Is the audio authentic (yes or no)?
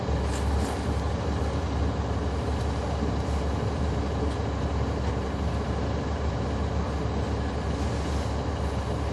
yes